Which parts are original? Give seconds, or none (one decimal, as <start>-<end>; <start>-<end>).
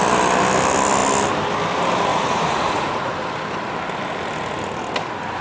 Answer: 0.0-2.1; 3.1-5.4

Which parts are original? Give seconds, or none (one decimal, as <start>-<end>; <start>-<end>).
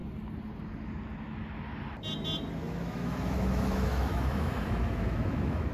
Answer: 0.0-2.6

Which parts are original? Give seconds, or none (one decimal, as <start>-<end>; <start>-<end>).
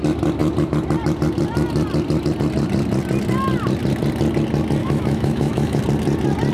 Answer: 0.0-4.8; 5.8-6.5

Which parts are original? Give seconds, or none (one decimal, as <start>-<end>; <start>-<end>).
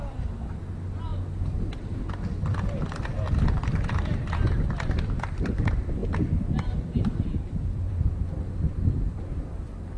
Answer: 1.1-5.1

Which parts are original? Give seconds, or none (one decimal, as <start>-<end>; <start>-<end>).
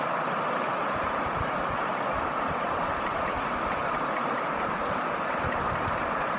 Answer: 0.0-0.8; 1.9-3.8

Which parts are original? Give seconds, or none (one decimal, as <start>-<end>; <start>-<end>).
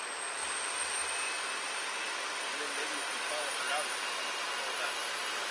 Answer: 0.0-0.4; 3.7-5.5